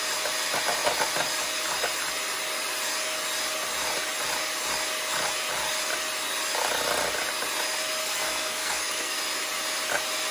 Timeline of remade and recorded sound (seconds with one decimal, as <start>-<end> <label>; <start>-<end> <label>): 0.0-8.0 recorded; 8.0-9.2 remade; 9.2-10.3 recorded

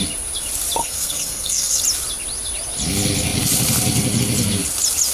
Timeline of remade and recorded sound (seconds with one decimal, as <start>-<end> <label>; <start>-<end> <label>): 0.0-0.8 recorded; 0.8-1.8 remade; 1.8-5.1 recorded

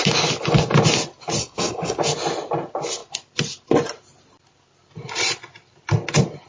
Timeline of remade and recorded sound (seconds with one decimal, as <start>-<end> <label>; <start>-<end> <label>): 0.0-1.4 recorded; 1.4-2.0 remade; 2.0-6.5 recorded